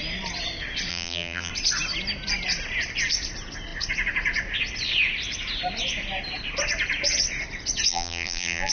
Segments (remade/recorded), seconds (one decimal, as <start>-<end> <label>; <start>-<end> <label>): 0.0-0.9 recorded; 0.9-1.5 remade; 1.5-7.9 recorded; 7.9-8.7 remade

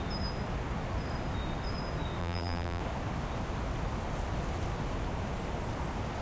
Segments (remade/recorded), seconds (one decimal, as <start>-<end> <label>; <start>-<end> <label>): 0.0-2.2 recorded; 2.2-2.8 remade; 2.8-6.2 recorded

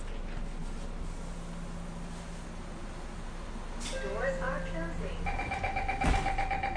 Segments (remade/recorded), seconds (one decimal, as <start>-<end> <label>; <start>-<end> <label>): 0.0-6.8 recorded

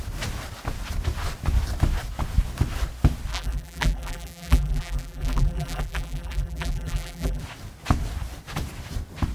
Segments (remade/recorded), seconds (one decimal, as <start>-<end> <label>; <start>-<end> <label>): 0.0-3.3 recorded; 3.3-7.4 remade; 7.4-9.3 recorded

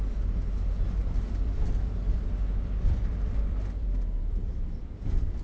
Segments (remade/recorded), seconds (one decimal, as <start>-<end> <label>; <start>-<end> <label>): 0.0-1.0 recorded; 1.0-4.2 remade; 4.2-5.4 recorded

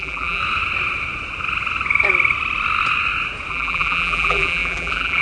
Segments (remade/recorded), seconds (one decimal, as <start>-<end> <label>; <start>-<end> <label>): 0.0-0.4 remade; 0.4-3.5 recorded; 3.5-5.2 remade

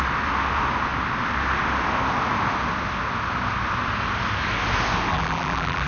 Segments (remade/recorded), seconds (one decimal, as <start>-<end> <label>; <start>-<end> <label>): 0.0-5.1 recorded; 5.1-5.9 remade

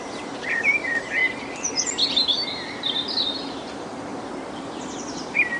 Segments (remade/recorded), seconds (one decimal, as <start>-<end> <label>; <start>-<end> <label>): 0.0-1.2 remade; 1.2-4.6 recorded; 4.6-5.6 remade